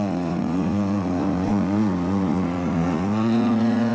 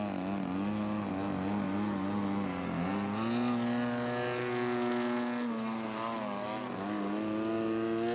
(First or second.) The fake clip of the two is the first